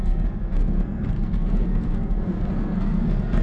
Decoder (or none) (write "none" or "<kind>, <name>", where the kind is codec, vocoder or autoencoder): codec, SNAC